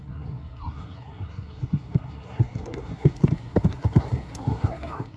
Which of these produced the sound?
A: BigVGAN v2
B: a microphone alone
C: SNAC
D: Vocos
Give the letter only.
C